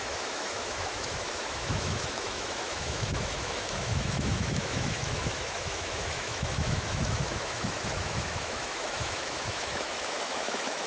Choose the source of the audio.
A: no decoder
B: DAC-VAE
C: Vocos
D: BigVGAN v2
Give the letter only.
B